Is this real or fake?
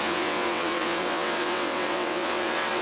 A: fake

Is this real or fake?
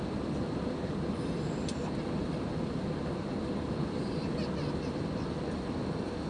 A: real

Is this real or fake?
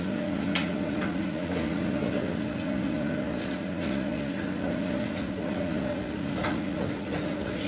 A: fake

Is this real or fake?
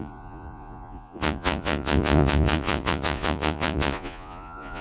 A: fake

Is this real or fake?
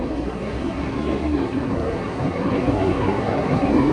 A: fake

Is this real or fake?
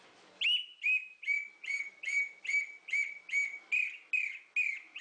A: real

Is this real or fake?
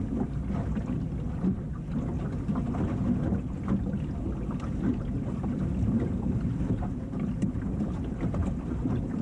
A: real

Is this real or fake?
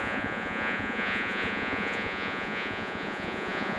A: fake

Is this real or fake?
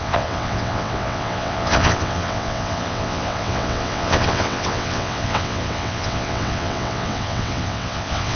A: fake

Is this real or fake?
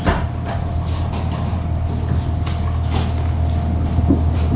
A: real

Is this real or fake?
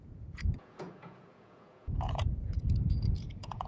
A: fake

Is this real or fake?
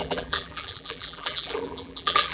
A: fake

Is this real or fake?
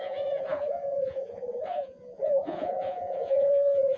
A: fake